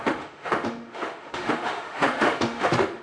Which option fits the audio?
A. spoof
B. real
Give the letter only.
A